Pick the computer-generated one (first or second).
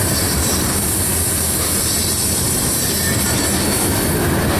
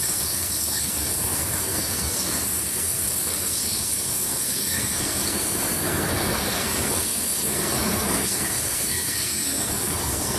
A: second